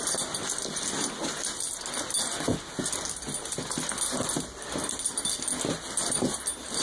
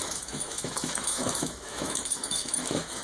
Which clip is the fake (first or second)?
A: second